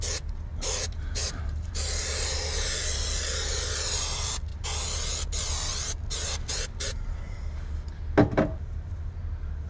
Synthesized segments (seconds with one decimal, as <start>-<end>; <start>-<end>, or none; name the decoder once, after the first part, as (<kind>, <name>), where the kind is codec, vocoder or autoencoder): 0.5-1.7 (vocoder, BigVGAN v2)